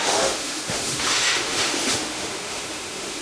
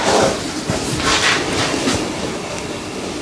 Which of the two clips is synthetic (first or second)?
first